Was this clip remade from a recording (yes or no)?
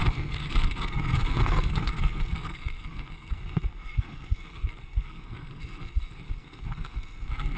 yes